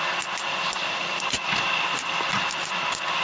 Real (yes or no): yes